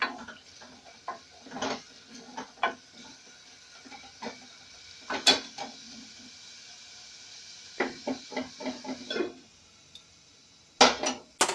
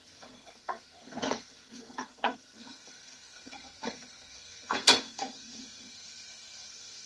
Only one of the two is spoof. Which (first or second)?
second